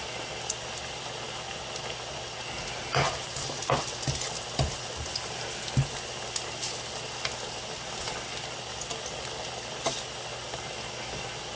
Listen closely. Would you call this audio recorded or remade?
recorded